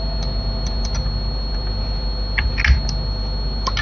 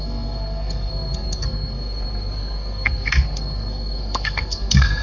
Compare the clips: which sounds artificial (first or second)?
second